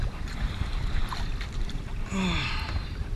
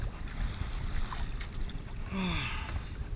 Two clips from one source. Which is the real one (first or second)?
second